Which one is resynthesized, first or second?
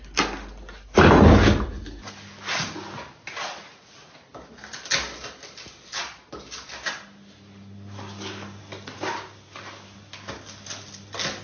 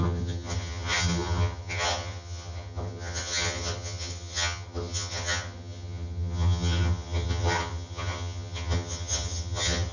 second